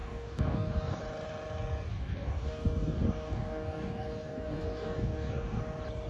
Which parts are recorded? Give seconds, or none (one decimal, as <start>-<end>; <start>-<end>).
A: 1.0-1.9; 5.6-6.1

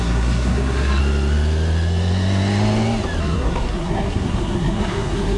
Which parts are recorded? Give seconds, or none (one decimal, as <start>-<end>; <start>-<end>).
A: 1.0-3.2

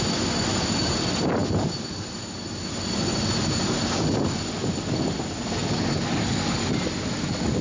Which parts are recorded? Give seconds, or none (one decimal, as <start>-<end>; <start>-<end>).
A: 0.0-7.6

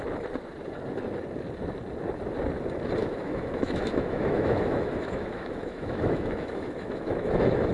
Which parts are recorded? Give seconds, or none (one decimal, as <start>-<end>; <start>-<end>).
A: 0.0-3.0

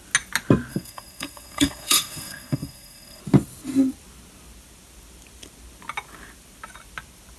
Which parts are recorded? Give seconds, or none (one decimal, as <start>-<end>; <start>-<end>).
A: 0.0-0.7; 3.2-7.4

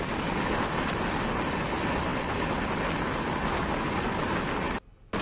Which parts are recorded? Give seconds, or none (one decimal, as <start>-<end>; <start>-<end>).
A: 0.0-5.2

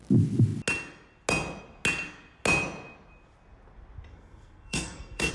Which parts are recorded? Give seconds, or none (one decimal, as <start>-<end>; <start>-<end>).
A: 0.0-4.1